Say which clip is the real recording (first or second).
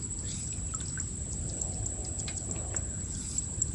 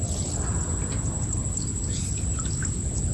second